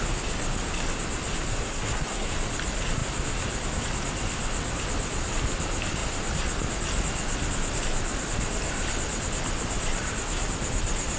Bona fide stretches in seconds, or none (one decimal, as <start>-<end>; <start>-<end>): 0.0-1.5; 2.3-11.2